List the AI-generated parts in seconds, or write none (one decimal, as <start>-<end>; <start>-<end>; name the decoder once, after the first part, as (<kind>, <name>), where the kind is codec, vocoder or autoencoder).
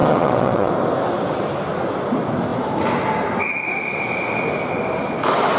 0.0-0.7 (vocoder, WaveNeXt)